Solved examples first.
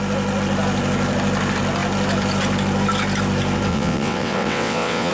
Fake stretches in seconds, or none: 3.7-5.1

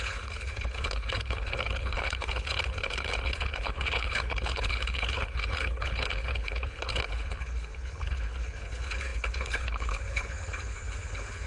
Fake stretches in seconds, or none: 0.0-11.5

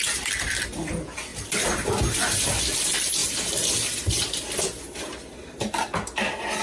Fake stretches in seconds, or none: 1.3-2.5

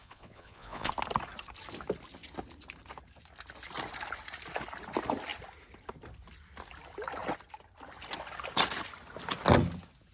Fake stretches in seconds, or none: 0.0-0.9